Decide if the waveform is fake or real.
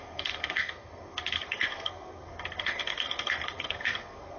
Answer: fake